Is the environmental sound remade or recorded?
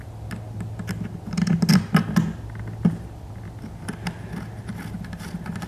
recorded